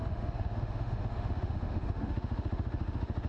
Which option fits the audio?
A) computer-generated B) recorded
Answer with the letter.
A